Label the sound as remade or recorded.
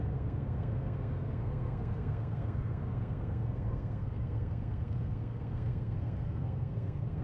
remade